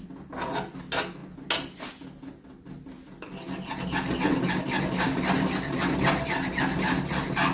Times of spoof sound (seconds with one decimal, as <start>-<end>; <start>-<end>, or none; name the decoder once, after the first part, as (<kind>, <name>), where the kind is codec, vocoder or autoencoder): none